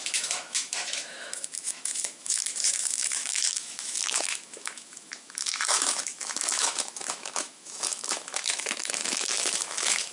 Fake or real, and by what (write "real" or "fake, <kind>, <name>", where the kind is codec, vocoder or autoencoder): fake, autoencoder, DAC-VAE